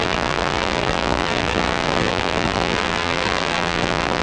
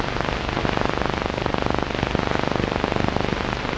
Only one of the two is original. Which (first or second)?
second